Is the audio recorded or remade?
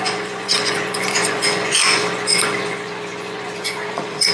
remade